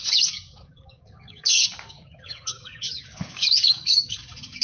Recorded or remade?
remade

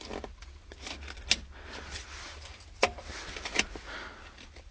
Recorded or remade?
recorded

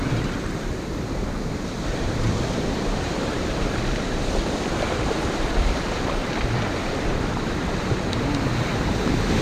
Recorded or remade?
remade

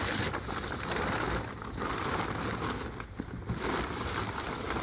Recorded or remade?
recorded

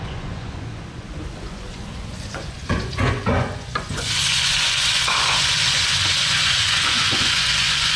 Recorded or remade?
remade